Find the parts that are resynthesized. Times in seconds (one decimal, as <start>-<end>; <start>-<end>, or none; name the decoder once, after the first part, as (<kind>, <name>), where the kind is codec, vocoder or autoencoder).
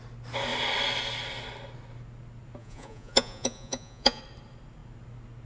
2.6-4.2 (vocoder, Vocos)